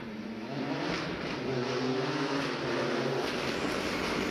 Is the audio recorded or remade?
recorded